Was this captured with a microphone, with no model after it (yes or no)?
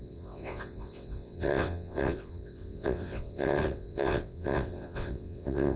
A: no